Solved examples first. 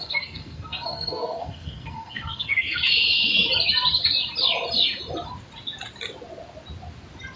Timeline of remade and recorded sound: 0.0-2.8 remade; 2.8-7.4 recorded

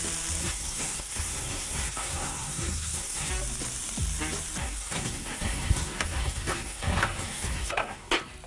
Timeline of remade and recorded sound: 0.0-0.4 recorded; 0.4-3.3 remade; 3.3-4.6 recorded; 4.6-8.1 remade; 8.1-8.5 recorded

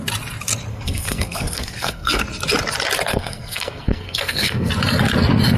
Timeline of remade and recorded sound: 0.0-0.7 recorded; 0.7-2.2 remade; 2.2-3.1 recorded; 3.1-4.7 remade; 4.7-5.6 recorded

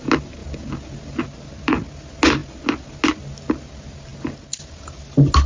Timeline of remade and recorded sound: 0.0-5.5 recorded

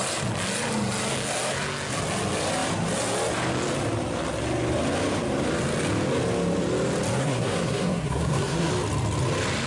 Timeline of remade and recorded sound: 0.0-7.2 recorded; 7.2-8.7 remade; 8.7-9.7 recorded

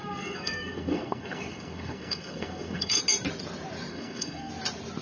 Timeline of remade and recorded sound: 0.0-3.0 remade; 3.0-3.9 recorded; 3.9-4.5 remade; 4.5-5.0 recorded

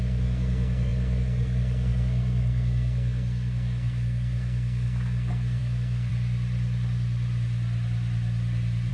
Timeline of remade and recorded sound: 0.0-6.1 remade; 6.1-8.9 recorded